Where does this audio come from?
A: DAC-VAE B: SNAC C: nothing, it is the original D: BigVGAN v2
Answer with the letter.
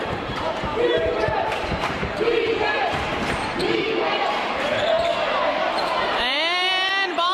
D